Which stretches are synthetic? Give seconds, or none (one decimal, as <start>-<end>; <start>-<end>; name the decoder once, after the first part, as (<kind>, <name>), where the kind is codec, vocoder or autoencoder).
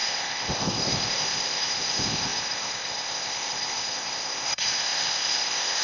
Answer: 0.0-5.8 (codec, ZipCodec)